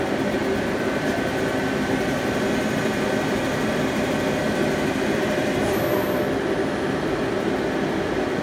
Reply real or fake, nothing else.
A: real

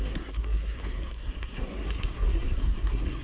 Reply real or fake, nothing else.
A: fake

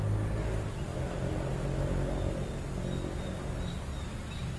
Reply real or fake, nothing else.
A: real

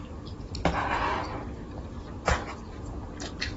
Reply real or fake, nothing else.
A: real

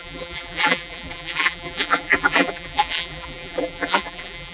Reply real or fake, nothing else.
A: fake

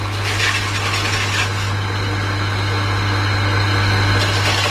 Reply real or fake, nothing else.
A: real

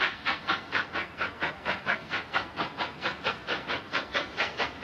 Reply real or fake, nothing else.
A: fake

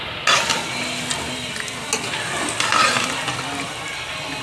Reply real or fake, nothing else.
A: real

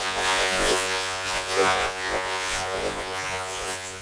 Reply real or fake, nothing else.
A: fake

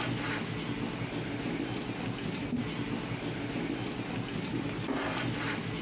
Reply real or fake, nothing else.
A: real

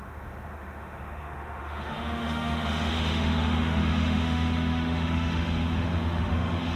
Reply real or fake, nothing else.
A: fake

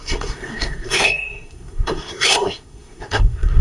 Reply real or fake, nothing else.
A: fake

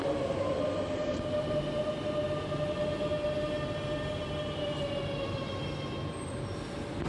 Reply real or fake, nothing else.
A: real